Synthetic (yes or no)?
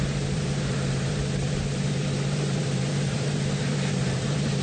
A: yes